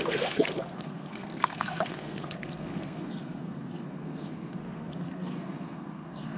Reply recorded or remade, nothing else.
remade